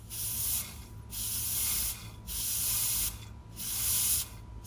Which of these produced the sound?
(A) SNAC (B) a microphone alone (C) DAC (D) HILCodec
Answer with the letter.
B